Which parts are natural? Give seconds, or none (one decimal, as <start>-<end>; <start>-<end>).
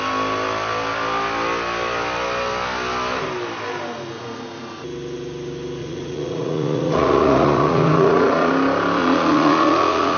0.0-5.8; 8.5-9.0